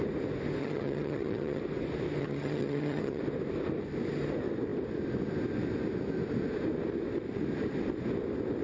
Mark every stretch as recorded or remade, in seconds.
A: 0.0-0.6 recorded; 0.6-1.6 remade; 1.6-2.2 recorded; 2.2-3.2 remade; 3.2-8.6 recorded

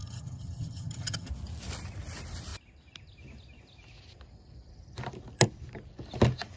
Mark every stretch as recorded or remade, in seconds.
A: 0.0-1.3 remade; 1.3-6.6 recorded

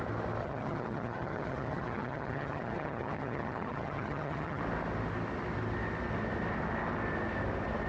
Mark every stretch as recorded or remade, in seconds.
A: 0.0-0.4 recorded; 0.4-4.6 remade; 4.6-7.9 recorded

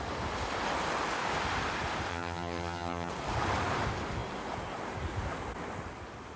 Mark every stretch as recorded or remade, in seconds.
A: 0.0-2.1 recorded; 2.1-3.1 remade; 3.1-6.4 recorded

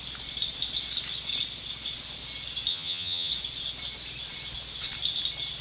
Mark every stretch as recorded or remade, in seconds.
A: 0.0-2.7 recorded; 2.7-3.3 remade; 3.3-5.6 recorded